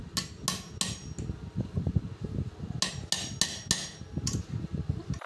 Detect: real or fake real